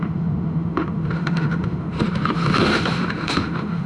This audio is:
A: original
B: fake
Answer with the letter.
B